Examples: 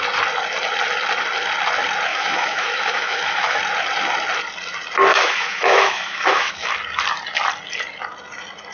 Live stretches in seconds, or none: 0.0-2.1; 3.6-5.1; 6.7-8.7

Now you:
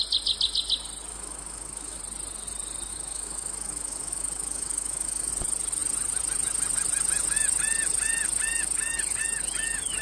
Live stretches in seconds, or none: 0.0-1.1; 2.0-2.9; 5.3-10.0

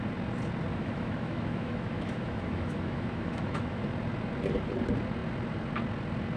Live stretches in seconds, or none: 0.0-0.7; 3.8-6.4

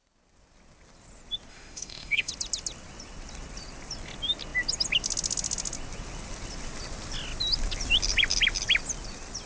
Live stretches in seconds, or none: 0.0-1.5; 2.3-9.5

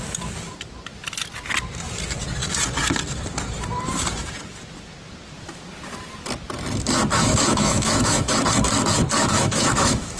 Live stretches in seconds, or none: 0.0-7.1; 8.3-9.2

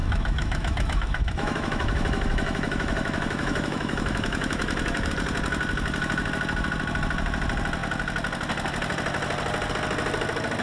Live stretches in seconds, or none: 5.1-10.6

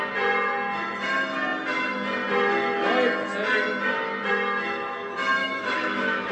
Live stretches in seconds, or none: 0.0-5.4